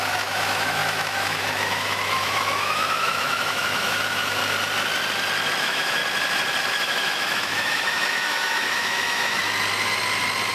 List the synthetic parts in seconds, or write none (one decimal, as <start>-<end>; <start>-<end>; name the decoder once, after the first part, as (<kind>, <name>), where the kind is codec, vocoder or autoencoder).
0.0-4.4 (autoencoder, DAC-VAE); 5.6-6.0; 6.7-9.4

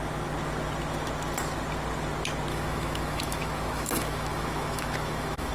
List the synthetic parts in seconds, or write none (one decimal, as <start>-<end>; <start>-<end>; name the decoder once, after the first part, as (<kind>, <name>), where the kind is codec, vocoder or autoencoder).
2.5-5.5 (autoencoder, DAC-VAE)

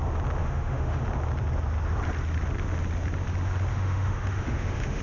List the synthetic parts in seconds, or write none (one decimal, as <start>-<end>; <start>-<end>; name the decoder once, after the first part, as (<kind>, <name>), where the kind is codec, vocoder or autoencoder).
0.4-1.0 (autoencoder, DAC-VAE); 3.7-5.0

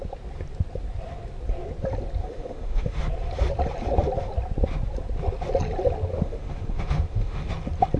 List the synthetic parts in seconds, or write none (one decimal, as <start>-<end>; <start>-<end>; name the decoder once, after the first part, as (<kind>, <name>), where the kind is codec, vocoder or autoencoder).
2.2-3.0 (autoencoder, DAC-VAE); 6.1-7.5

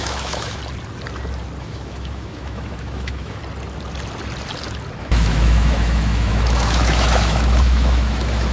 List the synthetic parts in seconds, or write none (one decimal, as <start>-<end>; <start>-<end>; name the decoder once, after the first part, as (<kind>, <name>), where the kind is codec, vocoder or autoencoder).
0.0-0.6 (autoencoder, DAC-VAE); 1.6-3.4; 5.0-8.5

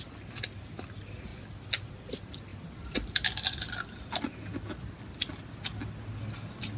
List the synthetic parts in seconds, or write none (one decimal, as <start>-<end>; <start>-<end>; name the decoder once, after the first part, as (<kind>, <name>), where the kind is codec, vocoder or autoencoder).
none

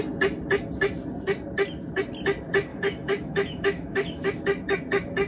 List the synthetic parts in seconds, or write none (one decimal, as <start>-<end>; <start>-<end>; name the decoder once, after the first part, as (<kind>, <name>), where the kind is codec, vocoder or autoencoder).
2.7-4.4 (autoencoder, DAC-VAE)

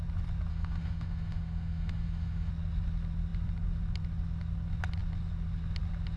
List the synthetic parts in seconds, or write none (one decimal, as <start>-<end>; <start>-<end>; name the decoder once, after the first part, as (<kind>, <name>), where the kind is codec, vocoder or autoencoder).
0.5-2.5 (autoencoder, DAC-VAE)